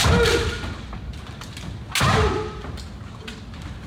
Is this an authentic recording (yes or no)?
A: yes